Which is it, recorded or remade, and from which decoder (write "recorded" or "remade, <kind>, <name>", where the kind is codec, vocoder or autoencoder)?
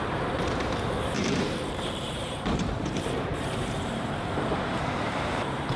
remade, vocoder, BigVGAN v2